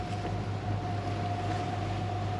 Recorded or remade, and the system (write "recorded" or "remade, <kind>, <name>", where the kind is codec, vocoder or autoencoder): recorded